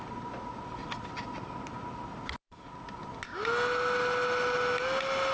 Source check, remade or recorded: recorded